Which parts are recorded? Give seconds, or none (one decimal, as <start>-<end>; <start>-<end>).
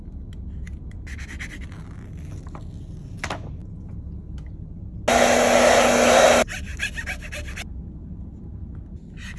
0.0-9.4